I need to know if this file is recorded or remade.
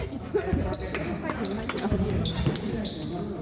recorded